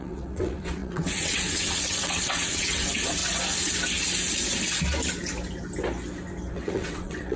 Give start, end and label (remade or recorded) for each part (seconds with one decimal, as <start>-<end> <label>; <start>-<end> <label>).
0.0-3.2 remade; 3.2-6.5 recorded; 6.5-7.4 remade